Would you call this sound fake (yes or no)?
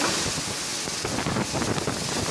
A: no